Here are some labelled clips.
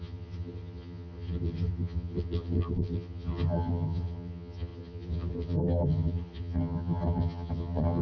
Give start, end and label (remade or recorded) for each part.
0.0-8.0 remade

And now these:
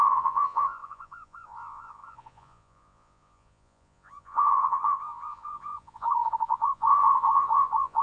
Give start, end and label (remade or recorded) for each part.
0.0-8.0 remade

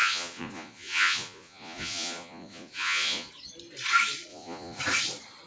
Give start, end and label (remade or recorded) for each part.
0.0-3.3 remade; 3.3-4.3 recorded; 4.3-4.8 remade; 4.8-5.5 recorded